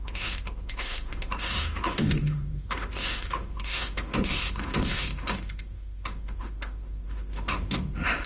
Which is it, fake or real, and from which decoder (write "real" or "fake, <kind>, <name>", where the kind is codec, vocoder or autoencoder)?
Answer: fake, autoencoder, DAC-VAE